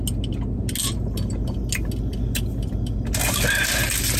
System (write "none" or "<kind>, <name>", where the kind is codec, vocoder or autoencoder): none